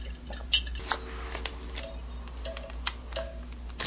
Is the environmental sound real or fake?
real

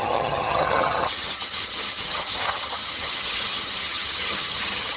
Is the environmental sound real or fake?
fake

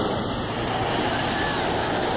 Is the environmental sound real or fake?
real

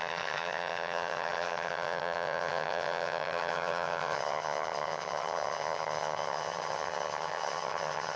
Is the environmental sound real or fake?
fake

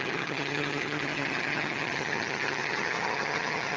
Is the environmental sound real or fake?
fake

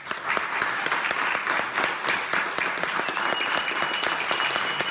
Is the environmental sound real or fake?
real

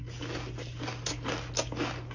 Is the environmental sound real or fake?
real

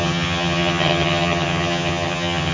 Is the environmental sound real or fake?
fake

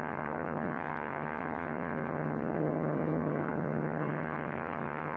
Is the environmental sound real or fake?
fake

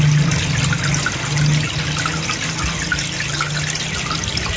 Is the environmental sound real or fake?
real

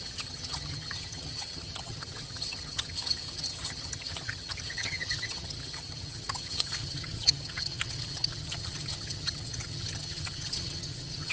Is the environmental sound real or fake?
fake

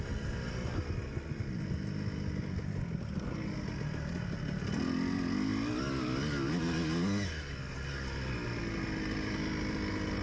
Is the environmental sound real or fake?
real